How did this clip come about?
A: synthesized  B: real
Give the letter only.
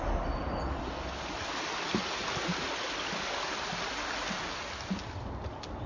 B